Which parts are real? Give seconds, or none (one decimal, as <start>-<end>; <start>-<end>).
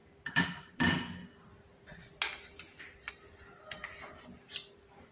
0.0-5.1